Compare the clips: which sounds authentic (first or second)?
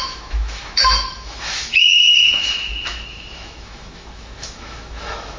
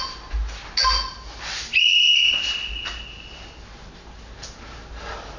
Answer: second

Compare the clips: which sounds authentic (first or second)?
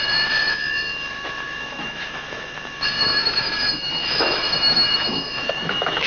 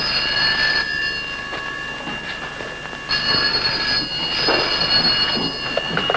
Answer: second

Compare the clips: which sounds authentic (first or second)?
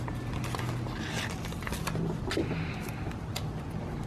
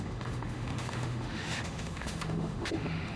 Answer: first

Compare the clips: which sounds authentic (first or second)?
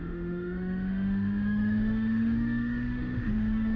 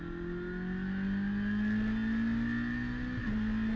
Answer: second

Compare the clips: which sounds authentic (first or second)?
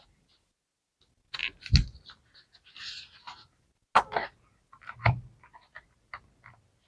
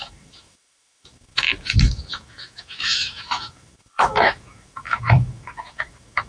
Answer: first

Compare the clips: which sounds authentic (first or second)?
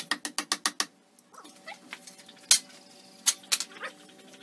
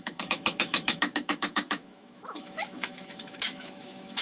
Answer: first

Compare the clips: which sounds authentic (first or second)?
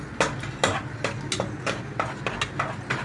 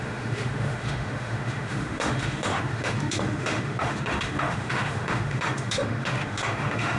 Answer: first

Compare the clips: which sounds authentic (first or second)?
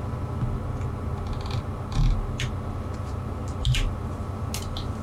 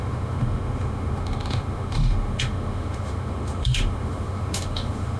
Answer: first